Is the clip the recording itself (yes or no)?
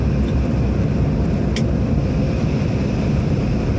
yes